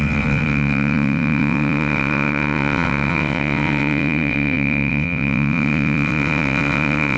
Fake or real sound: fake